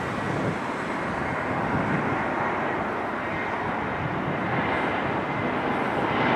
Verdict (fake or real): real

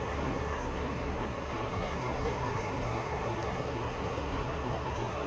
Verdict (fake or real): fake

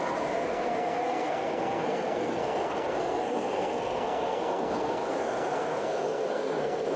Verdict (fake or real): fake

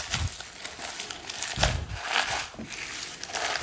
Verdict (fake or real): real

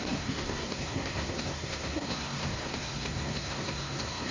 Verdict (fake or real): fake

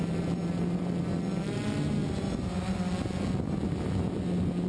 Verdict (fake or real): real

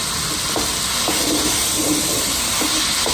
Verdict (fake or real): real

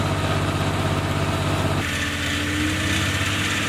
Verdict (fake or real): real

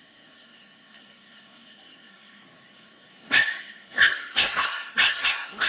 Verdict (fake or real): fake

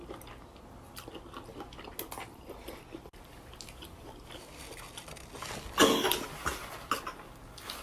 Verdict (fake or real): real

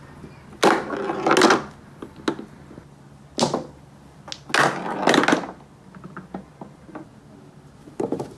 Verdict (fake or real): real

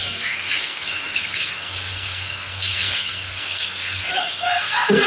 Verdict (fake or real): fake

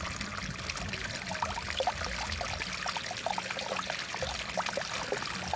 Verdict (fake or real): real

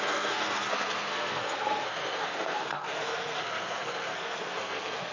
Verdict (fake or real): fake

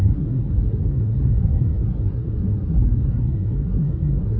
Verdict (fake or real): fake